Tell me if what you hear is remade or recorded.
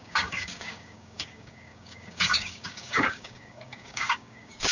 remade